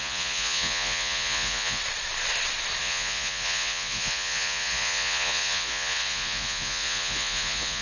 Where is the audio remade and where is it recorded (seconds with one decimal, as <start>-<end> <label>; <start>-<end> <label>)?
0.0-1.8 remade; 1.8-2.8 recorded; 2.8-7.8 remade